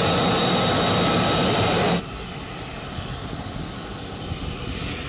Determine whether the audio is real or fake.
real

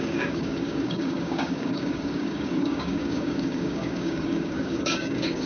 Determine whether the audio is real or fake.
fake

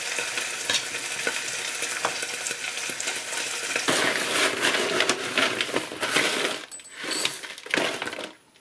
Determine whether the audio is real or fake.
real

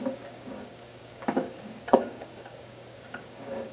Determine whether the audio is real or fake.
fake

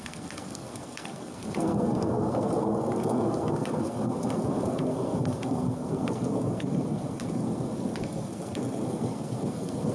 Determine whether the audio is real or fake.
fake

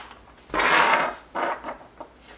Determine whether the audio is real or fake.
real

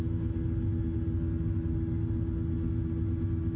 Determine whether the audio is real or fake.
real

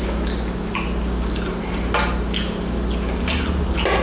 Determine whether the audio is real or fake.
real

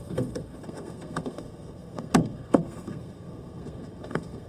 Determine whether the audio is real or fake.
fake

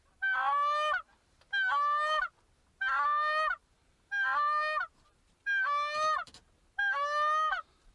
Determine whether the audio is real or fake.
real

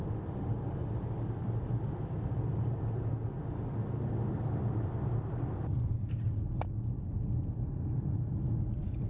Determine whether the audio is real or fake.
real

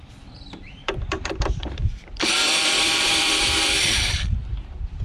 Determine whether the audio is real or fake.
fake